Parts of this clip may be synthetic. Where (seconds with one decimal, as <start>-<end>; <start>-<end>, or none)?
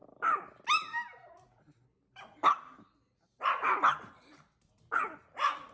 none